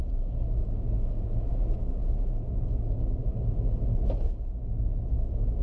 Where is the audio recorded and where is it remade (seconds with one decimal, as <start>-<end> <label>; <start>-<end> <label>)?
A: 0.0-5.6 recorded